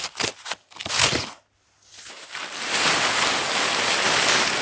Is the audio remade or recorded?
recorded